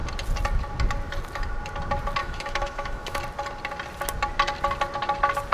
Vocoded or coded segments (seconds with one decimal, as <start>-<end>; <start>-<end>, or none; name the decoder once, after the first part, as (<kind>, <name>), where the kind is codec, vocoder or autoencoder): 2.2-3.2 (autoencoder, DAC-VAE)